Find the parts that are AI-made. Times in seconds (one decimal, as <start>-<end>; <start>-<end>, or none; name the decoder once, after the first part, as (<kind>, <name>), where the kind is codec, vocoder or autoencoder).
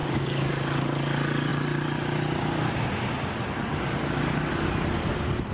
0.0-0.5 (codec, DAC)